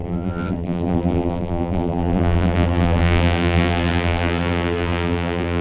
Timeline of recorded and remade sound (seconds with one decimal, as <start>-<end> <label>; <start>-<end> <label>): 0.0-5.6 remade